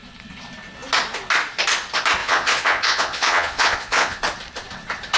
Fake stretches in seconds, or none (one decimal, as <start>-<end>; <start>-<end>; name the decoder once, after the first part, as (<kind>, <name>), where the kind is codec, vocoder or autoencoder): 2.2-4.2 (vocoder, Vocos)

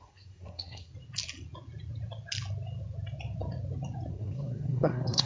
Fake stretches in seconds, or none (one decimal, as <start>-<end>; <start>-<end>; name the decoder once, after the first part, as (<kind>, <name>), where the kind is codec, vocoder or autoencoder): 0.0-0.9 (codec, SNAC); 4.1-5.3

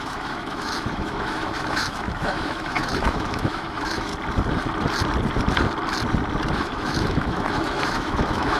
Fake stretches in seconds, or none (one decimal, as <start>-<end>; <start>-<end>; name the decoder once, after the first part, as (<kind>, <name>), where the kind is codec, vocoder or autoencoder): 0.0-4.1 (autoencoder, DAC-VAE); 6.6-8.6